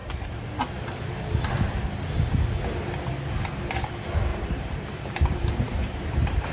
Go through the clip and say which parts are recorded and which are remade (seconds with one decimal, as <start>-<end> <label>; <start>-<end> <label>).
0.0-4.3 recorded; 4.3-6.5 remade